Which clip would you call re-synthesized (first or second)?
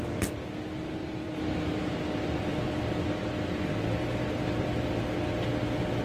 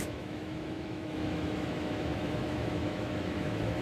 second